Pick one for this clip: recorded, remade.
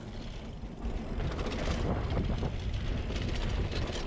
recorded